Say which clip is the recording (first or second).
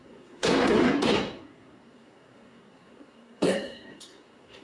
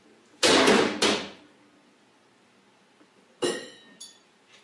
second